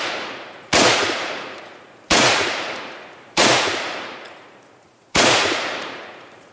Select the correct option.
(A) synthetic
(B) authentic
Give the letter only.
A